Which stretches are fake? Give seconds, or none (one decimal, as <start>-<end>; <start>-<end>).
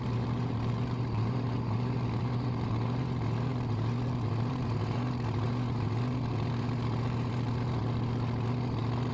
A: 0.0-7.8